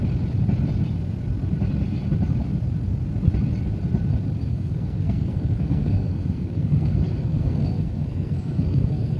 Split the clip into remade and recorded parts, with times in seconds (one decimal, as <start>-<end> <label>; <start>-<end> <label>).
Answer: 0.0-4.5 recorded; 4.5-9.2 remade